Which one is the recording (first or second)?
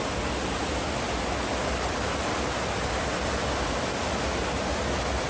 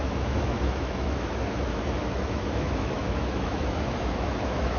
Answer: first